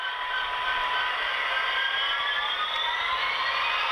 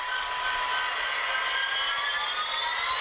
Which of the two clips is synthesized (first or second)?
first